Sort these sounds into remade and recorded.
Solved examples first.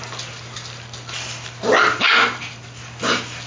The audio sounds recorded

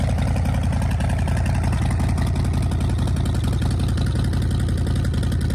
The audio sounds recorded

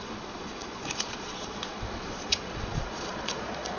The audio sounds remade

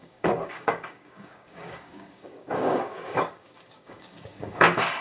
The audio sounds remade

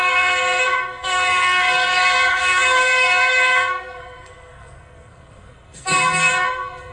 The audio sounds remade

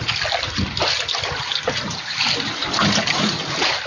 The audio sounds recorded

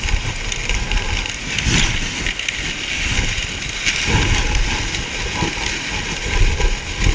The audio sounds recorded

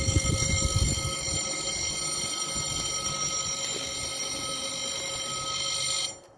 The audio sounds recorded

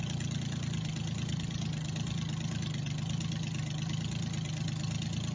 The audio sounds recorded